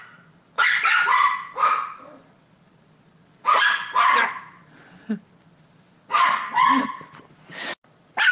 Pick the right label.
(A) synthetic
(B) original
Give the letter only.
B